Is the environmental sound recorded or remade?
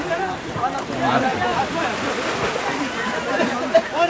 recorded